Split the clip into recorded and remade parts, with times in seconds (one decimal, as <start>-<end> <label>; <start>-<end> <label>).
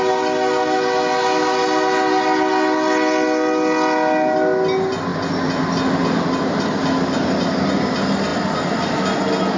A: 0.0-9.6 recorded